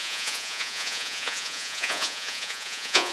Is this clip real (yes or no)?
no